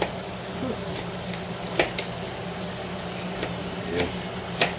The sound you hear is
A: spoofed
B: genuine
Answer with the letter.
B